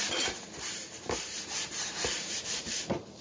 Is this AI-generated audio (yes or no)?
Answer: yes